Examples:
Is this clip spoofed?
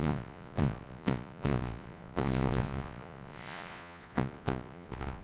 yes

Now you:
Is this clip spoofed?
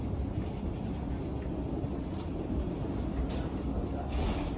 no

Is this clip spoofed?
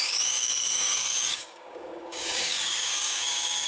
yes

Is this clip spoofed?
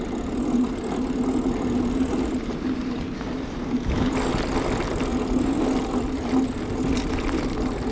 no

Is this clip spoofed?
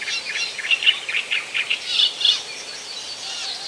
yes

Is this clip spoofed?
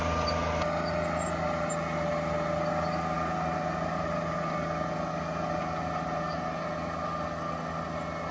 no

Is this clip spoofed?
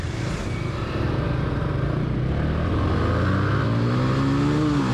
no